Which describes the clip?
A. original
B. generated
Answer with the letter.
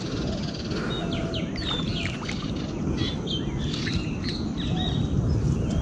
A